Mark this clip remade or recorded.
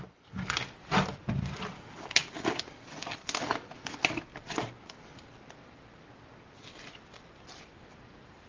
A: recorded